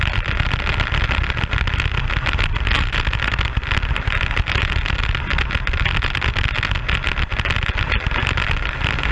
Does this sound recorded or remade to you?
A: recorded